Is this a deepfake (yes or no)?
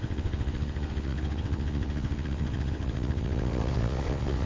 yes